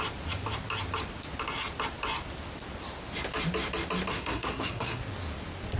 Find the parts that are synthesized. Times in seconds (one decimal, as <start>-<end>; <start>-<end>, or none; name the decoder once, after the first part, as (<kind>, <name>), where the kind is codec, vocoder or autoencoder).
4.1-5.0 (codec, SNAC)